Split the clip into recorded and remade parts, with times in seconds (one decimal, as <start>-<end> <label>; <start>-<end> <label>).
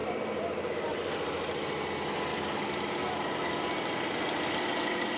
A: 0.0-0.7 remade; 0.7-2.3 recorded; 2.3-3.6 remade; 3.6-5.2 recorded